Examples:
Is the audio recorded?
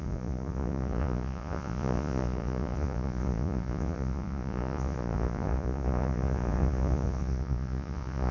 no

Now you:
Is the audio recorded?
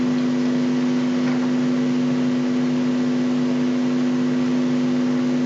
yes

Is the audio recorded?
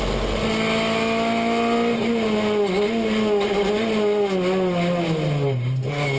yes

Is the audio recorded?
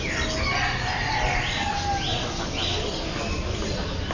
yes